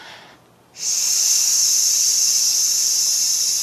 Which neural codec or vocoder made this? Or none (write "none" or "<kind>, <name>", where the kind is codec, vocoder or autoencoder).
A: none